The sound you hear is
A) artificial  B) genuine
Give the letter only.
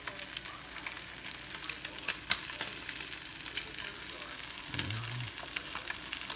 B